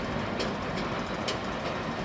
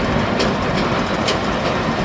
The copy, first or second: second